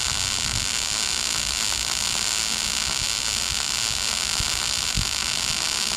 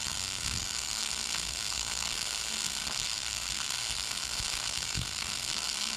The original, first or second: first